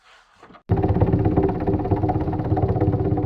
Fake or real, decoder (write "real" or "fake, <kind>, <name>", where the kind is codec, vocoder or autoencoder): real